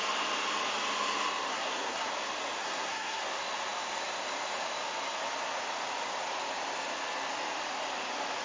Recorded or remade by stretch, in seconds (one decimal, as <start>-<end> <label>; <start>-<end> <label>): 0.0-1.5 recorded; 1.5-2.1 remade; 2.1-2.6 recorded; 2.6-3.2 remade; 3.2-8.4 recorded